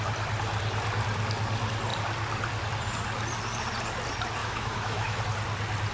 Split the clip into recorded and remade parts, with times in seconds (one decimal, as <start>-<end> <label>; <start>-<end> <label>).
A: 0.0-4.4 recorded; 4.4-5.2 remade; 5.2-5.9 recorded

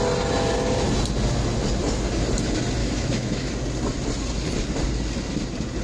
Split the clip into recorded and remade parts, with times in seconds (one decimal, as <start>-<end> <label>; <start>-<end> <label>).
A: 0.0-2.8 recorded; 2.8-3.5 remade; 3.5-5.8 recorded

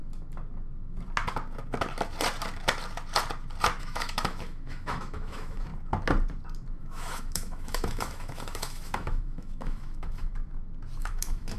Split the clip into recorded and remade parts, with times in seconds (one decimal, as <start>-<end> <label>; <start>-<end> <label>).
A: 0.0-3.8 recorded; 3.8-5.7 remade; 5.7-6.8 recorded; 6.8-10.3 remade; 10.3-11.0 recorded; 11.0-11.6 remade

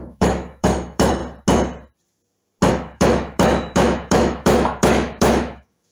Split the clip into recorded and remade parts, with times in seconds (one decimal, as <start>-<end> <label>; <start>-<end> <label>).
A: 0.0-1.2 remade; 1.2-2.7 recorded; 2.7-5.9 remade